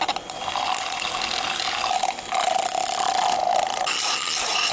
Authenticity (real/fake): real